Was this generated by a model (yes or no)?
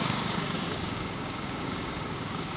yes